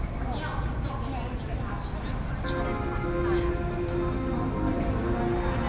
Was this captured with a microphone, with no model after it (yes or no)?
yes